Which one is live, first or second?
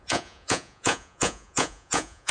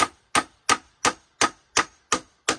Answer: second